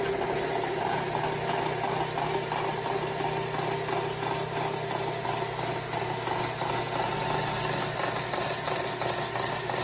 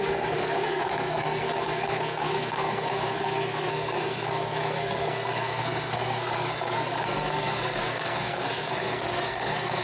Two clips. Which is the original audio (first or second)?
first